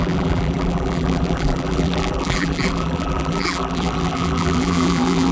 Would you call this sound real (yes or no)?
no